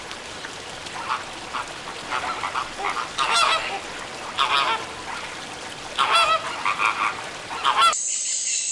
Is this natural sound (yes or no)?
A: yes